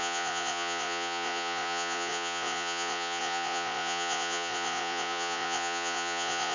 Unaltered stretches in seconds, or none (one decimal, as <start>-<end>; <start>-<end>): none